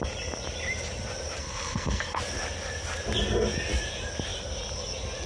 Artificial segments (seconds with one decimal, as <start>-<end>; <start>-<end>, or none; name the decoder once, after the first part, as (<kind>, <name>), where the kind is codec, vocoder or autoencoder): 1.4-2.2 (codec, SNAC)